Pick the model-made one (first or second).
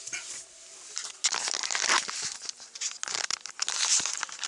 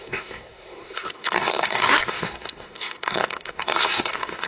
second